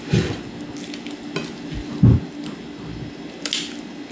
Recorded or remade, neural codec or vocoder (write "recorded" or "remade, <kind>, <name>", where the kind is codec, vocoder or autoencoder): recorded